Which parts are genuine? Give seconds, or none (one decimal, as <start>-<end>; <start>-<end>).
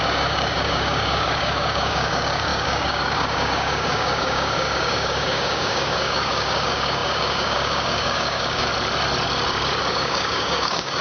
8.7-9.9